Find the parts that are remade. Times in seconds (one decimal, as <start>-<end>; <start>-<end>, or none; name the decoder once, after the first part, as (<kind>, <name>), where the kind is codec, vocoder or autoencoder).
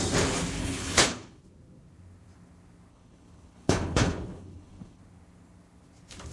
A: 0.6-1.4 (codec, HILCodec); 2.9-5.0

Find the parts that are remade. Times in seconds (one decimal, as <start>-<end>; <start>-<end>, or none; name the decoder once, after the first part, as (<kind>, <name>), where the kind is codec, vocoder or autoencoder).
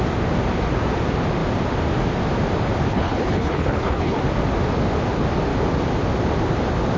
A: 2.9-4.2 (codec, HILCodec)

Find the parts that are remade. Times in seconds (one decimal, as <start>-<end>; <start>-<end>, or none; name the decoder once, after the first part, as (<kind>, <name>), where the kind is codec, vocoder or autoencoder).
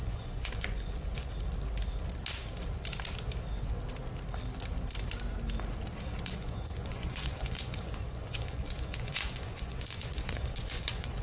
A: 0.0-1.3 (vocoder, Vocos); 6.2-11.2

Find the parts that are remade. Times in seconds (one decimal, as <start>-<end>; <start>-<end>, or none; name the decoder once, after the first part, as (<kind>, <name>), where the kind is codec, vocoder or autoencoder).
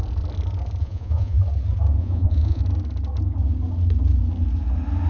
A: 0.8-1.4 (vocoder, Vocos); 2.0-2.6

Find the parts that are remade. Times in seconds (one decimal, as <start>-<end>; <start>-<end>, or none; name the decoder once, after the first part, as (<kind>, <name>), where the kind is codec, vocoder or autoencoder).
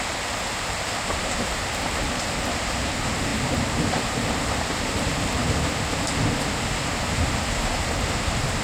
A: 0.0-5.4 (vocoder, BigVGAN v2); 6.7-8.6